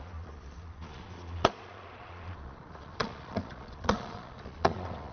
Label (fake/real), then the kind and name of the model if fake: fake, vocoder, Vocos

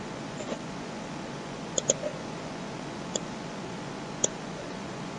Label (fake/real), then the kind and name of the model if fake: fake, vocoder, Vocos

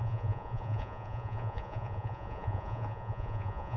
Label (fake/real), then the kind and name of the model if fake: fake, vocoder, Vocos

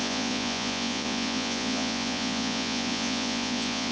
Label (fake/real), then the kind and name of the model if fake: fake, vocoder, Vocos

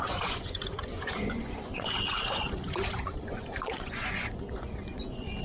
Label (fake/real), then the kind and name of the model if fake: fake, vocoder, Vocos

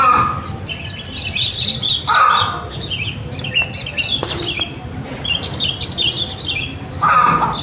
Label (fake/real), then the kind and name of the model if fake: real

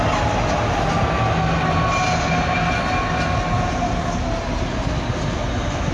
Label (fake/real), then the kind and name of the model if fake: real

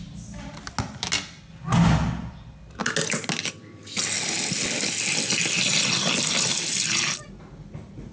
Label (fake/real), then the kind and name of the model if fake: real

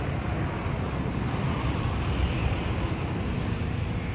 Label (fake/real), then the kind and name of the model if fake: real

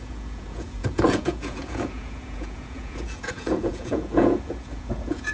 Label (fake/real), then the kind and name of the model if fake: fake, vocoder, Vocos